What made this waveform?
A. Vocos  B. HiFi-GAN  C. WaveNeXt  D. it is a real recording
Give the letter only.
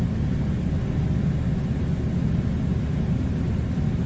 D